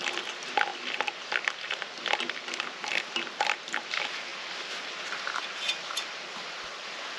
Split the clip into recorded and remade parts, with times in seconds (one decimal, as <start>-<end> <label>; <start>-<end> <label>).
0.0-7.2 recorded

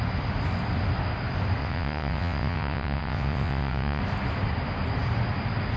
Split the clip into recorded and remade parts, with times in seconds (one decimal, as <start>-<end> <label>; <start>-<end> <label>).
0.0-1.6 recorded; 1.6-4.0 remade; 4.0-5.8 recorded